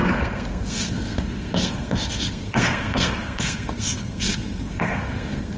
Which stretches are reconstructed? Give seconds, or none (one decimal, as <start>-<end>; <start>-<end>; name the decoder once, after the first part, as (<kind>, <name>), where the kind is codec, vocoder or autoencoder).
0.0-5.6 (codec, SNAC)